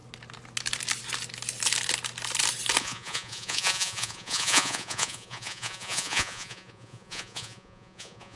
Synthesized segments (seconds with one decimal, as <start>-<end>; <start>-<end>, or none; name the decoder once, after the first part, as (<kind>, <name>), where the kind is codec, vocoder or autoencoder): 2.8-8.4 (vocoder, Vocos)